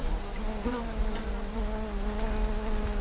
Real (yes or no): yes